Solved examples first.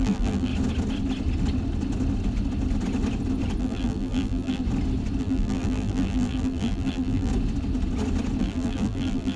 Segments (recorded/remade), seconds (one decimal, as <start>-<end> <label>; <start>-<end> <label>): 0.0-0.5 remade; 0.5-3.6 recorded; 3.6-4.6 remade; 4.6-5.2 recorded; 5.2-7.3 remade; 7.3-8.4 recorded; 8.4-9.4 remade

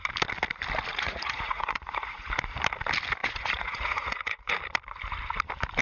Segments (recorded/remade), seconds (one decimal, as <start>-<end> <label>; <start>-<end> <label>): 0.0-0.9 recorded; 0.9-2.3 remade; 2.3-3.2 recorded; 3.2-4.5 remade; 4.5-5.8 recorded

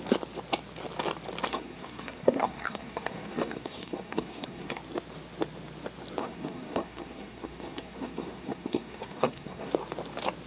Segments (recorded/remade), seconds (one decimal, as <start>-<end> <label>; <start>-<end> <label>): 0.0-1.5 recorded; 1.5-4.8 remade; 4.8-6.2 recorded; 6.2-9.7 remade; 9.7-10.5 recorded

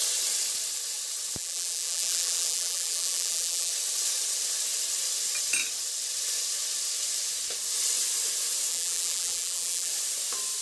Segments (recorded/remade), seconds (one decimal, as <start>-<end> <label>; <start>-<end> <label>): 0.0-1.4 recorded; 1.4-3.7 remade; 3.7-8.7 recorded; 8.7-9.9 remade; 9.9-10.6 recorded

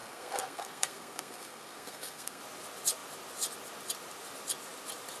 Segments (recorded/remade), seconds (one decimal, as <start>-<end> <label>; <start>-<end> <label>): 0.0-2.4 remade; 2.4-5.2 recorded

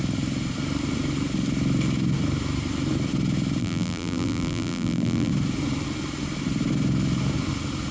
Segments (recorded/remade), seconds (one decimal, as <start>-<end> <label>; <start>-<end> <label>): 0.0-3.6 recorded; 3.6-5.3 remade; 5.3-7.9 recorded

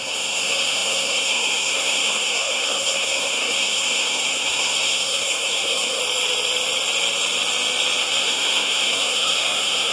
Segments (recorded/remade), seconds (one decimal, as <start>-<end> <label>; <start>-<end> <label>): 0.0-6.0 remade; 6.0-8.0 recorded; 8.0-9.9 remade

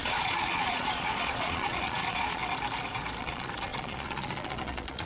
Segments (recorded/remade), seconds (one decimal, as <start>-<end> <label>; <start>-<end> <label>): 0.0-2.4 remade; 2.4-3.2 recorded; 3.2-5.1 remade